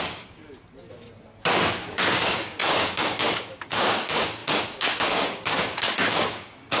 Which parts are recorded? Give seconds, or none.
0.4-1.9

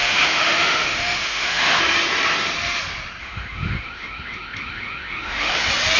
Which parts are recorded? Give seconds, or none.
1.8-3.2; 5.6-6.0